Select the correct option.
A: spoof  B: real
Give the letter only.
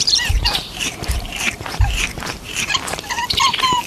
A